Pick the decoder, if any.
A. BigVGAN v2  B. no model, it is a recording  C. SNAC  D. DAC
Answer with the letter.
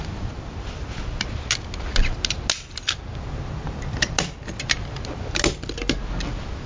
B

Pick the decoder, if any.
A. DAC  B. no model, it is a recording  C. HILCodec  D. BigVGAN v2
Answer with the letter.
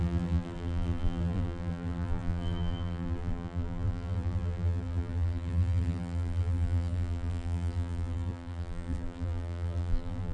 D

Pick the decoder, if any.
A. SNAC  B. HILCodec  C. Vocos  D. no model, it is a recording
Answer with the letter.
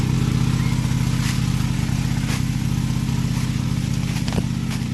D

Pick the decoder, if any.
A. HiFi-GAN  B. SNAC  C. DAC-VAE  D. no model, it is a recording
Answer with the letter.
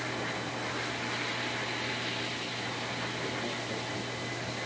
D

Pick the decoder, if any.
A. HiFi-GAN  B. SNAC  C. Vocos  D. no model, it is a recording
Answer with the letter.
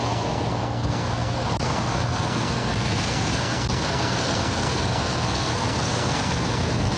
B